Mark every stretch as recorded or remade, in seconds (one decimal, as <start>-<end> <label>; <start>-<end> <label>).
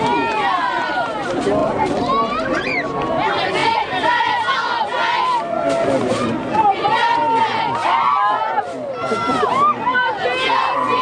0.0-1.6 recorded; 1.6-3.0 remade; 3.0-3.6 recorded; 3.6-4.2 remade; 4.2-11.0 recorded